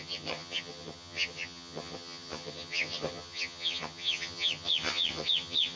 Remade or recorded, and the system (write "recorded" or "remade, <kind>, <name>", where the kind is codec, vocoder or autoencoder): remade, vocoder, HiFi-GAN